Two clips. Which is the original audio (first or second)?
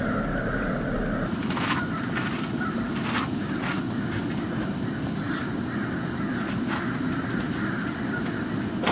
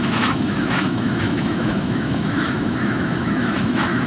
first